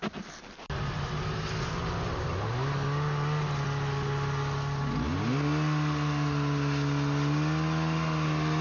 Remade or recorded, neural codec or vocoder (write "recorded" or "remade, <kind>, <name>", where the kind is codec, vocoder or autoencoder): recorded